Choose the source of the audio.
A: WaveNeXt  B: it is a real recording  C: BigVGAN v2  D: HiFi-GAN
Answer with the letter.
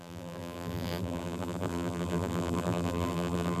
C